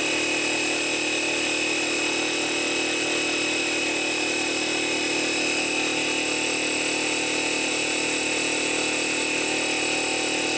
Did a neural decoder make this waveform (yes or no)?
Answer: no